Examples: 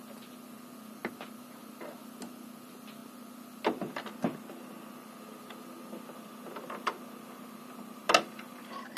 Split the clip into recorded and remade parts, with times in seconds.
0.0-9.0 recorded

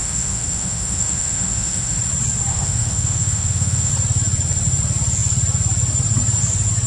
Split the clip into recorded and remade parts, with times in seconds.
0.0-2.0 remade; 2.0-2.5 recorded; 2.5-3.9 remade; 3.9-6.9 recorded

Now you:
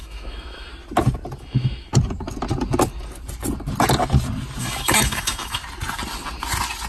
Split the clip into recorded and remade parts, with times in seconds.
0.0-0.7 remade; 0.7-1.4 recorded; 1.4-1.9 remade; 1.9-4.6 recorded; 4.6-5.6 remade; 5.6-6.9 recorded

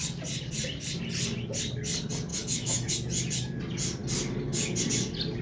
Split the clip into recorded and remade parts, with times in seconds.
0.0-2.3 recorded; 2.3-2.9 remade; 2.9-5.4 recorded

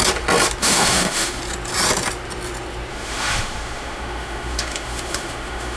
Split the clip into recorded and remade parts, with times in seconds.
0.0-0.6 recorded; 0.6-1.4 remade; 1.4-2.9 recorded; 2.9-5.8 remade

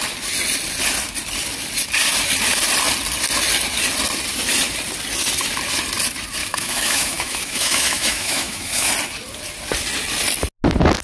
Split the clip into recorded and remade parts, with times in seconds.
0.0-6.4 recorded; 6.4-8.9 remade; 8.9-11.0 recorded

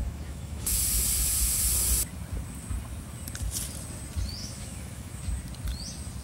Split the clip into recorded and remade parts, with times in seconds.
0.0-0.8 remade; 0.8-4.4 recorded; 4.4-5.2 remade; 5.2-6.2 recorded